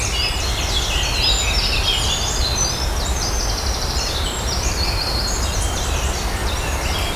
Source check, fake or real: real